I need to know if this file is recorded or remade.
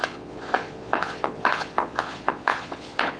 remade